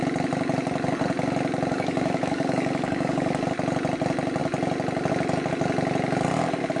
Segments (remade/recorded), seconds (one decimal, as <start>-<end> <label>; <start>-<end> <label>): 0.0-1.7 recorded; 1.7-3.4 remade; 3.4-6.8 recorded